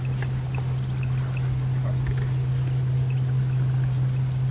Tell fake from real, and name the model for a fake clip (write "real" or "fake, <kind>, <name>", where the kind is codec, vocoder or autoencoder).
real